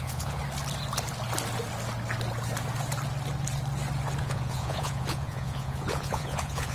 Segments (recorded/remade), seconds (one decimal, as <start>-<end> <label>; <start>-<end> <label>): 0.0-0.4 remade; 0.4-4.2 recorded; 4.2-6.7 remade